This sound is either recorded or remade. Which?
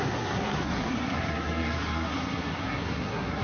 remade